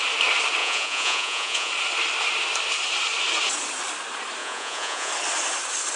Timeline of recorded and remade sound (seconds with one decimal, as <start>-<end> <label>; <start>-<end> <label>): 0.0-0.6 recorded; 0.6-1.7 remade; 1.7-4.4 recorded; 4.4-5.1 remade; 5.1-6.0 recorded